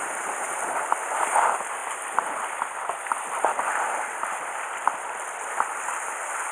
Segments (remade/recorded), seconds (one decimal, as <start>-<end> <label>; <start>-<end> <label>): 0.0-6.5 recorded